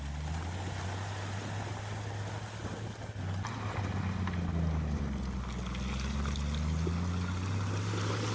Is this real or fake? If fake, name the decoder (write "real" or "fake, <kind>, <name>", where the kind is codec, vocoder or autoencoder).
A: real